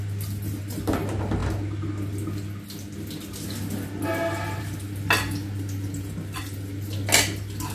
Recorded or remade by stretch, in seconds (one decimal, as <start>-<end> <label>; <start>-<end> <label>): 0.0-7.7 recorded